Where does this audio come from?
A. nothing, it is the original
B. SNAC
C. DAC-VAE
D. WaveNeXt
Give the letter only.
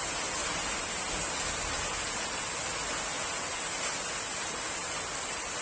A